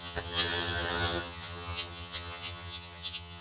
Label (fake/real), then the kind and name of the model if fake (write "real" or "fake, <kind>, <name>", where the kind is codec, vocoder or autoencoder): fake, vocoder, HiFi-GAN